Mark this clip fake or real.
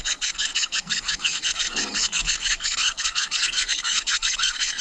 fake